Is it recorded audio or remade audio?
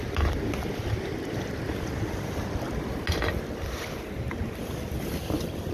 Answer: recorded